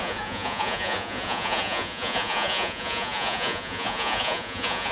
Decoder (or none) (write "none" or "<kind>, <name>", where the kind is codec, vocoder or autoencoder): vocoder, Vocos